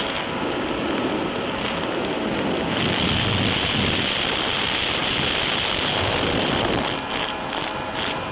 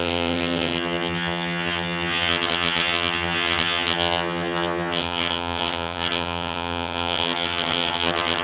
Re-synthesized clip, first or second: second